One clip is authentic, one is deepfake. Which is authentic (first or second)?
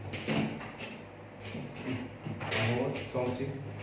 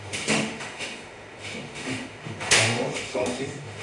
first